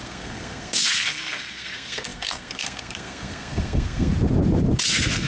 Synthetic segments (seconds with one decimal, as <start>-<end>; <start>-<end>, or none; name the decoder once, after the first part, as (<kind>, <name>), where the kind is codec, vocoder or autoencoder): 0.0-4.1 (codec, SNAC); 4.8-5.3